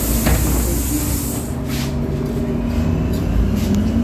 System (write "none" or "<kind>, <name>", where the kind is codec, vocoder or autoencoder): none